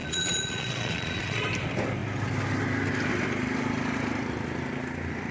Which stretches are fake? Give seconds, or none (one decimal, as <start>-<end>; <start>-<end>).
0.0-1.5

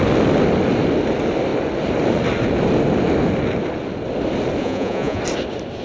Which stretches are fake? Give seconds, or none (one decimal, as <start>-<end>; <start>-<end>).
4.6-5.2

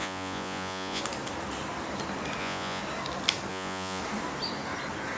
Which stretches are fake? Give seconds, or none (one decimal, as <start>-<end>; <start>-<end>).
0.0-1.0; 2.4-2.8; 3.5-4.0